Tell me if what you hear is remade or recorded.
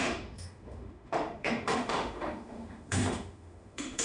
remade